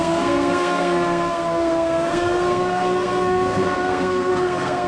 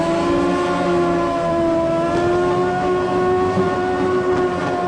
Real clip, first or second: second